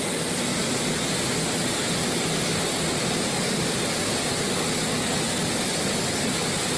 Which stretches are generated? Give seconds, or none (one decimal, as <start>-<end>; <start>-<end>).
none